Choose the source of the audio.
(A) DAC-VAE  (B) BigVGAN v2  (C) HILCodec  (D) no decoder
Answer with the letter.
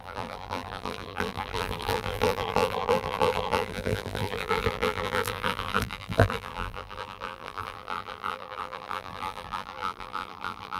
B